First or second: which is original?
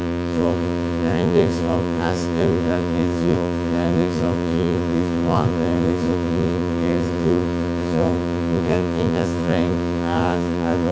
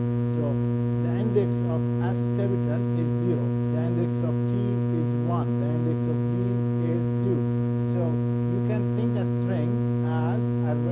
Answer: second